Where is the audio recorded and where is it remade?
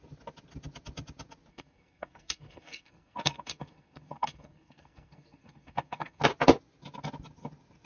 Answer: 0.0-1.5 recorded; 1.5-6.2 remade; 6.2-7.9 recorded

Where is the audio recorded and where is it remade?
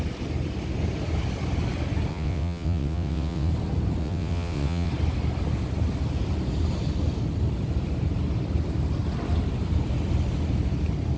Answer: 0.0-2.1 recorded; 2.1-3.5 remade; 3.5-4.0 recorded; 4.0-4.9 remade; 4.9-11.2 recorded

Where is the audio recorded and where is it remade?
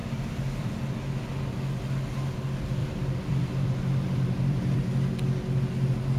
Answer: 0.0-0.7 remade; 0.7-2.8 recorded; 2.8-4.8 remade; 4.8-6.2 recorded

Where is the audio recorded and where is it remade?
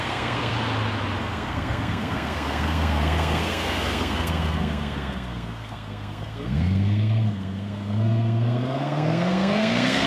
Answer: 0.0-0.5 remade; 0.5-1.2 recorded; 1.2-10.1 remade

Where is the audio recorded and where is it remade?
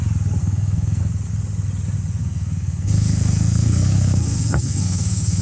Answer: 0.0-0.4 recorded; 0.4-1.0 remade; 1.0-2.2 recorded; 2.2-5.4 remade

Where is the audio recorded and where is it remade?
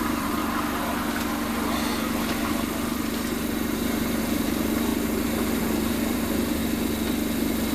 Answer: 0.0-0.4 remade; 0.4-4.2 recorded; 4.2-6.6 remade; 6.6-7.7 recorded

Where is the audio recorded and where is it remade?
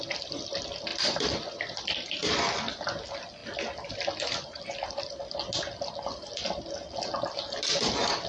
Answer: 0.0-0.9 recorded; 0.9-2.5 remade; 2.5-8.3 recorded